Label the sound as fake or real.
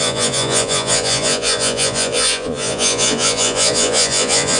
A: fake